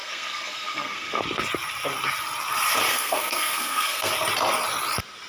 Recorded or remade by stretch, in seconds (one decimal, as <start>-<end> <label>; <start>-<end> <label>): 0.0-1.2 remade; 1.2-2.9 recorded; 2.9-4.1 remade; 4.1-5.3 recorded